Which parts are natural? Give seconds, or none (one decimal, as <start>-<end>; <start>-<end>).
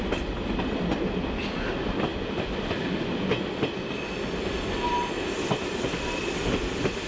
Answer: 0.0-7.1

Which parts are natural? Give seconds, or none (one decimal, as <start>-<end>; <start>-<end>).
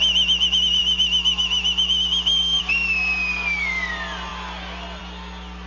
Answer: 0.0-5.7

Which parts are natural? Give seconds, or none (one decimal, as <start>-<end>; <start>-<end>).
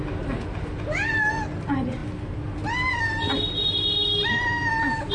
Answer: 0.0-5.1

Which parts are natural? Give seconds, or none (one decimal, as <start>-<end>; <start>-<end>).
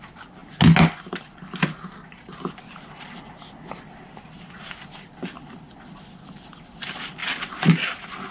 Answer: 0.0-8.3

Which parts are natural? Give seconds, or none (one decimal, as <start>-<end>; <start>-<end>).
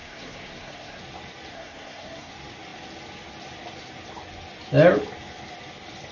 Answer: 1.0-1.5; 2.3-6.1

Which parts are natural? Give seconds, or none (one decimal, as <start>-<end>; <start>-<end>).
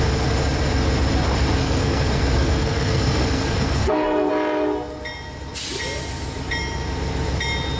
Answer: 0.0-1.6; 4.3-7.8